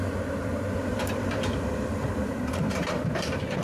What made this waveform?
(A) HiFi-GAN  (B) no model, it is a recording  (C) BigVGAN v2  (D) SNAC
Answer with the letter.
C